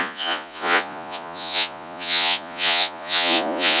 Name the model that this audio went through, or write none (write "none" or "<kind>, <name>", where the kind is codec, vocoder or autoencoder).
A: vocoder, Vocos